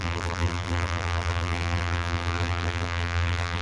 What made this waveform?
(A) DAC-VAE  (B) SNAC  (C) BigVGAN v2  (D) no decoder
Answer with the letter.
C